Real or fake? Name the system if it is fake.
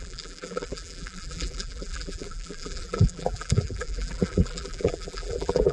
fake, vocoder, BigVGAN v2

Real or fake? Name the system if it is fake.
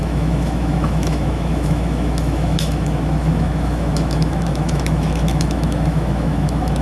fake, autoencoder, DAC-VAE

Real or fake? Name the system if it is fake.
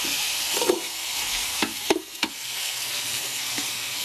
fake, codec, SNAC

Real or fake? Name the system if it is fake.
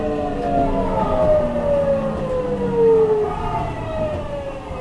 real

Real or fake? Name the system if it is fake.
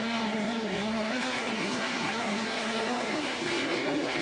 fake, codec, SNAC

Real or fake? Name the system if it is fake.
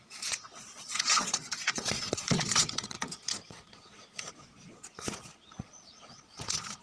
fake, vocoder, Vocos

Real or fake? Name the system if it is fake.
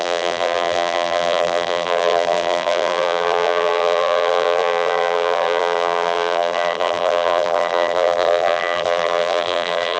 fake, vocoder, BigVGAN v2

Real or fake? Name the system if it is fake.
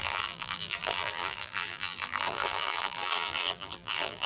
fake, vocoder, BigVGAN v2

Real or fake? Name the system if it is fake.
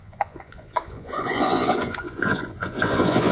fake, vocoder, Vocos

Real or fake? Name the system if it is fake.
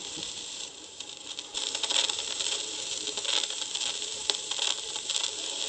fake, vocoder, BigVGAN v2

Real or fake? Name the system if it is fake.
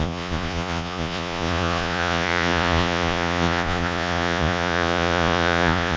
fake, vocoder, Vocos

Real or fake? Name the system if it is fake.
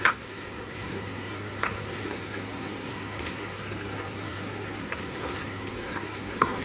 fake, codec, SNAC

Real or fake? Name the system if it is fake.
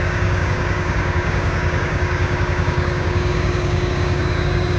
fake, codec, DAC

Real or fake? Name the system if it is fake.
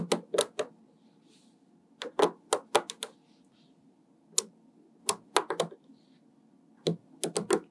real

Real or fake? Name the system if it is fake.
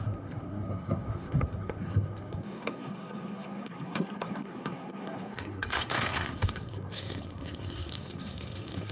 fake, codec, SNAC